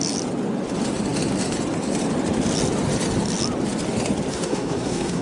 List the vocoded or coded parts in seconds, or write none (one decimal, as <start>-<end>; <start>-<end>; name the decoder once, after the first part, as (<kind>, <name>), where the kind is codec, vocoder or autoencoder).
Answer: 4.3-5.2 (codec, SNAC)